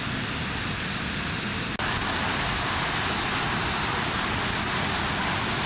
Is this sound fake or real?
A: real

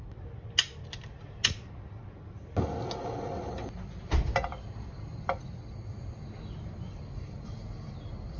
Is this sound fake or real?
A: real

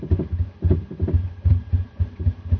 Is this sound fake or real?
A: real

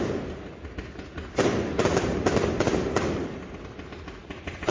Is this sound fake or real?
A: real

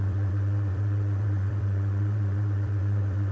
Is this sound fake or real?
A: fake